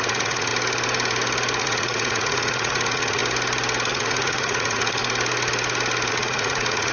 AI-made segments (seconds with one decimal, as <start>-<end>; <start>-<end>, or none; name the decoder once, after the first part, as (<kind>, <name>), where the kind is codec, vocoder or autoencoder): 0.0-0.5 (vocoder, Vocos); 1.6-3.2; 3.9-5.0; 6.1-6.9